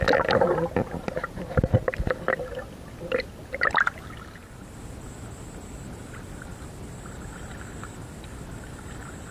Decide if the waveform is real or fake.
real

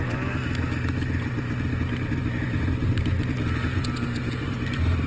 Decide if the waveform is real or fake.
real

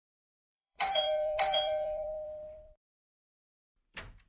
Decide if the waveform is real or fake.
fake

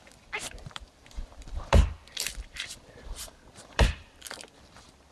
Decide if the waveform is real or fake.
fake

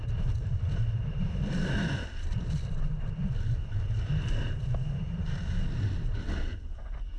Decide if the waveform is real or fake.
real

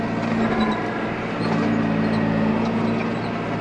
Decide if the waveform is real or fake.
real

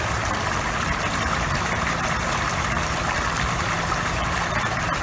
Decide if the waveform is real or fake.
fake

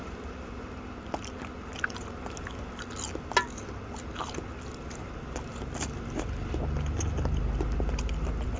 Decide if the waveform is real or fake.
real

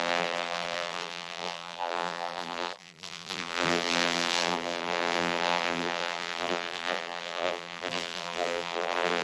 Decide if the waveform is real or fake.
fake